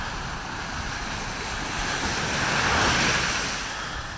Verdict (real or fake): real